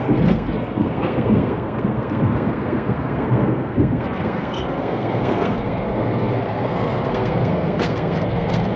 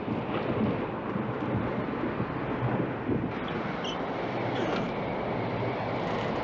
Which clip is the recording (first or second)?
second